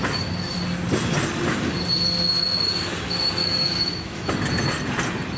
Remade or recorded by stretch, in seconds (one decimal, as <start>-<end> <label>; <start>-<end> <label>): 0.0-3.4 recorded; 3.4-4.3 remade; 4.3-5.4 recorded